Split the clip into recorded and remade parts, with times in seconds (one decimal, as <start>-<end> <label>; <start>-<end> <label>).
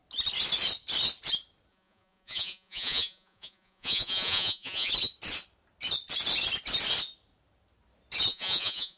0.0-1.7 recorded; 1.7-4.9 remade; 4.9-8.3 recorded; 8.3-9.0 remade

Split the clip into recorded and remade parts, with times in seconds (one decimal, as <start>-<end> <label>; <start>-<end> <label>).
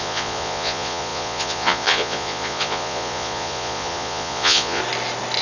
0.0-4.8 remade; 4.8-5.4 recorded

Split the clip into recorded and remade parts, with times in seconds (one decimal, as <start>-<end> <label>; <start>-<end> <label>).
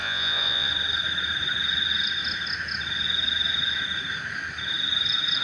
0.0-0.7 remade; 0.7-5.4 recorded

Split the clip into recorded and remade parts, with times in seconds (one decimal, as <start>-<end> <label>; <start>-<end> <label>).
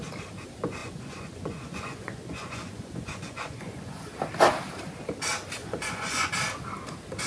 0.0-0.8 recorded; 0.8-4.1 remade; 4.1-5.6 recorded; 5.6-6.3 remade; 6.3-7.3 recorded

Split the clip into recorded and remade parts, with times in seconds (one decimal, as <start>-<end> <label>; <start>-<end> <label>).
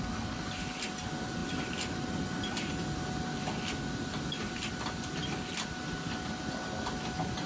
0.0-7.5 recorded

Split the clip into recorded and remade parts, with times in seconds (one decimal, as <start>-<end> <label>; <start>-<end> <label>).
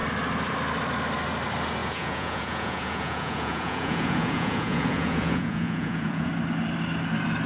0.0-1.8 recorded; 1.8-6.3 remade; 6.3-7.5 recorded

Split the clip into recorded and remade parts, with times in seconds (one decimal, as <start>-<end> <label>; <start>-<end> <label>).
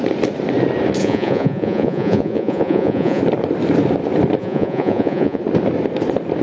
0.0-1.0 recorded; 1.0-3.2 remade; 3.2-4.4 recorded; 4.4-5.4 remade; 5.4-6.4 recorded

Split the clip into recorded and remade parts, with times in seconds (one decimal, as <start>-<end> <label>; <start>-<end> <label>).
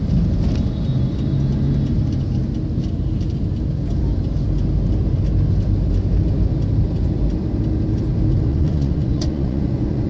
0.0-8.5 recorded; 8.5-10.1 remade